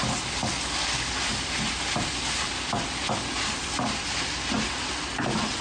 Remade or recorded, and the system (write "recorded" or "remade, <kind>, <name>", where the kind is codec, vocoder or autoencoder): recorded